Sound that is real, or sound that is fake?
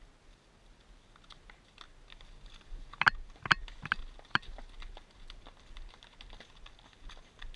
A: real